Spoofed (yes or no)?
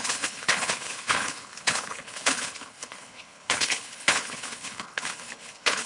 yes